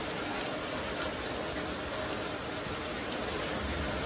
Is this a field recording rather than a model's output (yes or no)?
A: yes